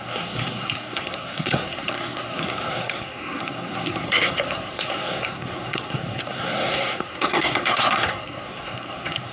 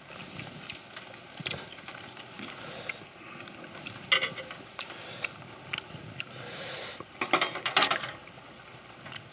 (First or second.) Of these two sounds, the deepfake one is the first